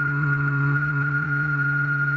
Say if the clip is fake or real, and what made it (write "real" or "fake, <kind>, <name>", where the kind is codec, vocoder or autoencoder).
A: fake, vocoder, Vocos